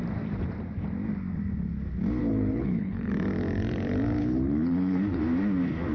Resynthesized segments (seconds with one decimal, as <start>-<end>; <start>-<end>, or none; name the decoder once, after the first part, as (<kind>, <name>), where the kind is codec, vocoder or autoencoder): 2.2-3.1 (codec, HILCodec); 4.2-5.2